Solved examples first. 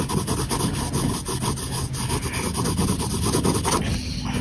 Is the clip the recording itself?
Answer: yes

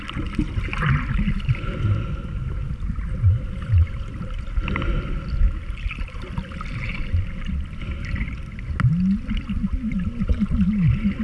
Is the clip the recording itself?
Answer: yes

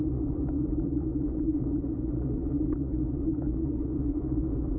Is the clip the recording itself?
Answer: no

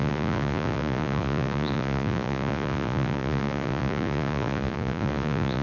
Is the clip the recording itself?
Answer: no